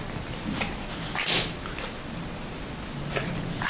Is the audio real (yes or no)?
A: yes